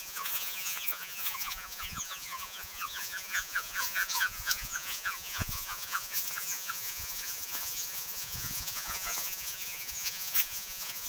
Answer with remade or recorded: remade